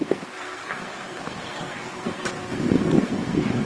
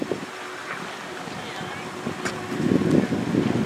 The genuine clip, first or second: second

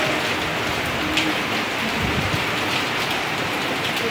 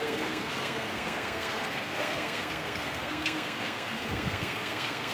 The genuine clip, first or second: first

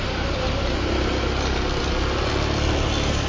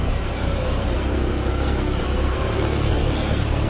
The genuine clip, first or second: first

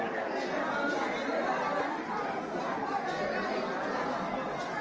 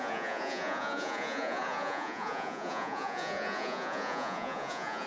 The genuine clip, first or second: first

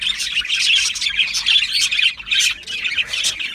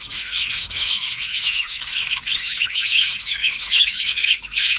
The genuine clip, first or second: first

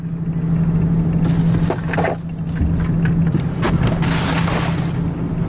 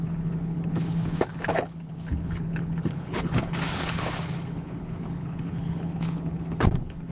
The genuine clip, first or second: first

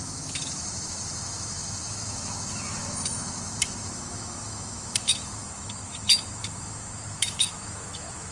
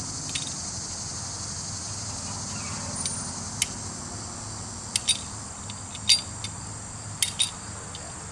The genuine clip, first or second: second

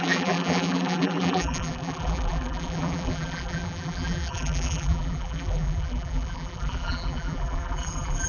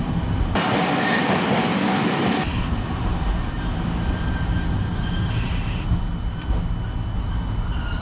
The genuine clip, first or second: second